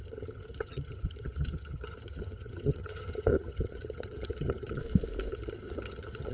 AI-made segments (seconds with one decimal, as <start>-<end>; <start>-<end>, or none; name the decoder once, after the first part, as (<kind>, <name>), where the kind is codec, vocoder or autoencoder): 0.0-4.8 (vocoder, HiFi-GAN); 5.3-6.3